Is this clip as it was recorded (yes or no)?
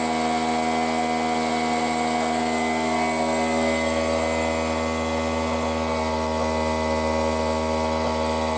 yes